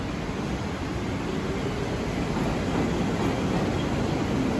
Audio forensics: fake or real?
real